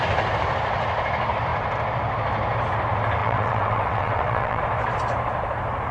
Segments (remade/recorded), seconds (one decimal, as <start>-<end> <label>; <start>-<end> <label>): 0.0-3.2 recorded; 3.2-4.6 remade; 4.6-5.9 recorded